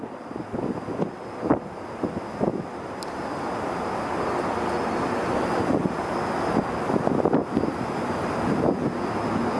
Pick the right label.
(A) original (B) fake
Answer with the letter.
A